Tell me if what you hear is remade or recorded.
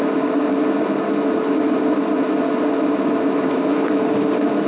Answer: recorded